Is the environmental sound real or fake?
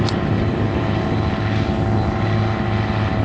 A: real